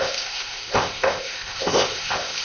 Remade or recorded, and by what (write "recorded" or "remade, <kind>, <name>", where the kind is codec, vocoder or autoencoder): remade, codec, ZipCodec